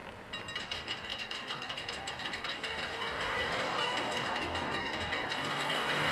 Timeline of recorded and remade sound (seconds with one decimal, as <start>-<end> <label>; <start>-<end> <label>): 0.0-0.6 recorded; 0.6-6.1 remade